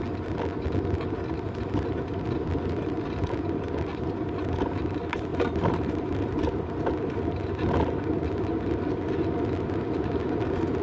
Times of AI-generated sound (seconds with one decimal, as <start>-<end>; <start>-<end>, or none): 5.3-6.7